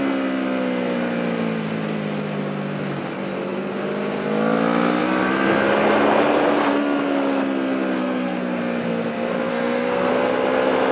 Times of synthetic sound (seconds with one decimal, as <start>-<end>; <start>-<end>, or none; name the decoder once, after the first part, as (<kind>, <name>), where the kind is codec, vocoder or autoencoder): 8.0-8.6 (codec, SNAC); 9.5-10.1